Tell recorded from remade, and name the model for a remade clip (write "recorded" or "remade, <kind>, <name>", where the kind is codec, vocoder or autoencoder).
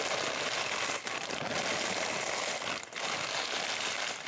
recorded